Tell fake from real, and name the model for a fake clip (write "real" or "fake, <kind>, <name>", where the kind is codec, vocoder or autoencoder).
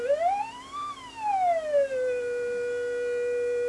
real